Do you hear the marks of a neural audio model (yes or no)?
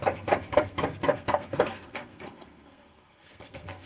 yes